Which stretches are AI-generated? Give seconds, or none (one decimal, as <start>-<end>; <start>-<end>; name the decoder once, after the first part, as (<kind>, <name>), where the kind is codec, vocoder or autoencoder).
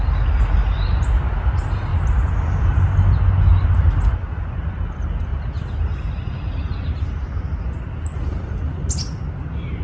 none